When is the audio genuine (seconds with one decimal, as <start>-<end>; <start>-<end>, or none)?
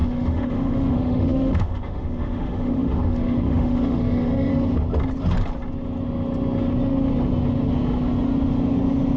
4.5-9.2